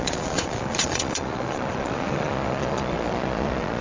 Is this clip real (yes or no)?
no